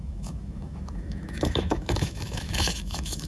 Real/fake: fake